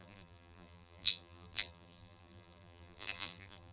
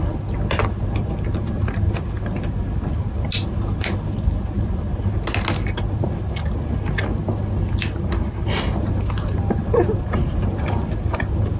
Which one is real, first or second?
second